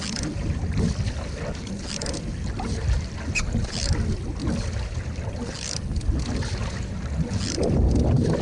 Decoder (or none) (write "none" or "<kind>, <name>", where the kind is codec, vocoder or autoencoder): none